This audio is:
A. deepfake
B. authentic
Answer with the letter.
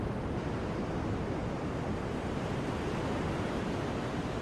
B